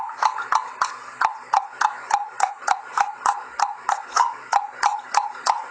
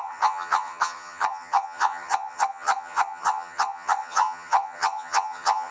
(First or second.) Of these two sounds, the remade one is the second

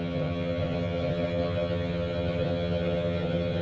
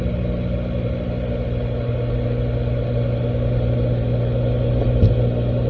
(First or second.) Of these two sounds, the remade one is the first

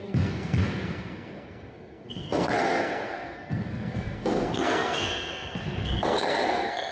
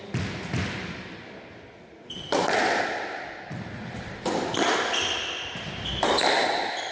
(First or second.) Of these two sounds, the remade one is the first